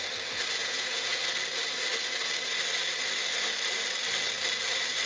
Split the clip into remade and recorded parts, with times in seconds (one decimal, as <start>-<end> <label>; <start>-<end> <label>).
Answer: 0.0-0.6 recorded; 0.6-1.2 remade; 1.2-5.1 recorded